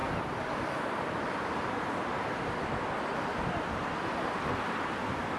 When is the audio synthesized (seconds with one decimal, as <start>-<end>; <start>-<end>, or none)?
0.0-3.2